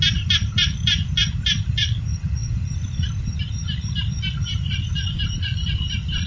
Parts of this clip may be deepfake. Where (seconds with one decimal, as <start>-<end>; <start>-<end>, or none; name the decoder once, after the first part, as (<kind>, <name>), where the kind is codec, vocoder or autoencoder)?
none